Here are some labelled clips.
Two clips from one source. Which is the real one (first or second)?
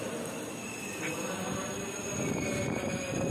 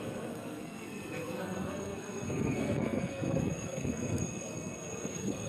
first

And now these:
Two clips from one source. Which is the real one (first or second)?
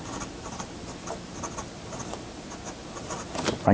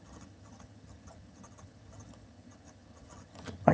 first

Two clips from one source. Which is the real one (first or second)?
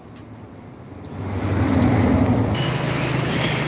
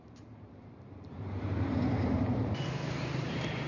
first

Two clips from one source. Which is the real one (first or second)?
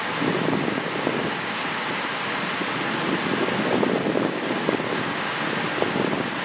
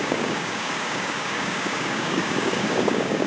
first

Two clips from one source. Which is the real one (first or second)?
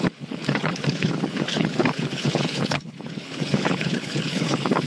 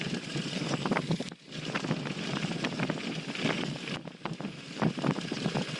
second